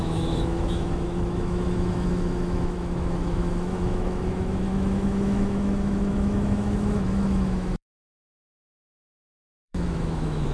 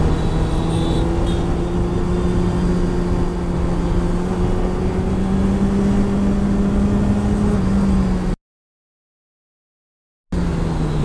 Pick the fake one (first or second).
first